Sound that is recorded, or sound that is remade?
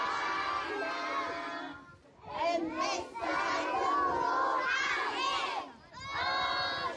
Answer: recorded